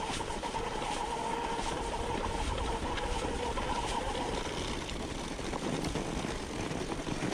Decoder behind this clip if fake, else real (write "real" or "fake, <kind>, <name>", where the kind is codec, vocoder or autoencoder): real